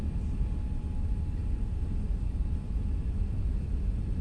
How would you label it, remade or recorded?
recorded